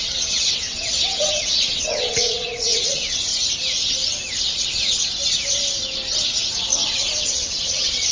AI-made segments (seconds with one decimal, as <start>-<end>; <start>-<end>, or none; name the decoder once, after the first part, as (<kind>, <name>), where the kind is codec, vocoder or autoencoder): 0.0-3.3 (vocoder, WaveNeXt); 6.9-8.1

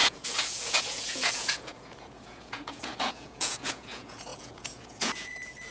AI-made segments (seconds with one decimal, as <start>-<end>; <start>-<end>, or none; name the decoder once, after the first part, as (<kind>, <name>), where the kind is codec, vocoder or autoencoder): 0.0-5.7 (vocoder, Vocos)

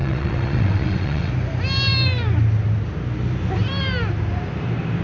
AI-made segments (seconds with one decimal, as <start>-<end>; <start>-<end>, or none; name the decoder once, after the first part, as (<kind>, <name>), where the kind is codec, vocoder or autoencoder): 0.0-1.3 (vocoder, WaveNeXt)